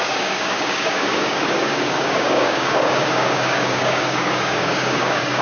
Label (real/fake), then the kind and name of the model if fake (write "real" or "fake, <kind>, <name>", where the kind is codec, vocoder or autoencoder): fake, codec, DAC